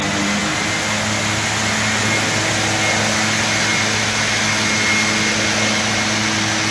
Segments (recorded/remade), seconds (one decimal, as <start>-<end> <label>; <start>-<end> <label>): 0.0-6.7 recorded

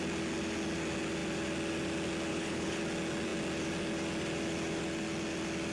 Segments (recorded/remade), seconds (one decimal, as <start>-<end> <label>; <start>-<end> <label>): 0.0-2.3 recorded; 2.3-2.8 remade; 2.8-5.7 recorded

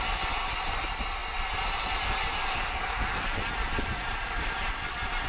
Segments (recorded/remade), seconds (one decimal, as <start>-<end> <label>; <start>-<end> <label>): 0.0-5.3 recorded